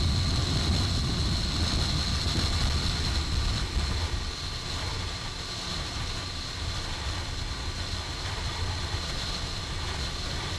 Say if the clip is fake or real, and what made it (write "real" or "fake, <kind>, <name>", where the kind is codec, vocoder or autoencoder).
real